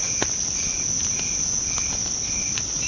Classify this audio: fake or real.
real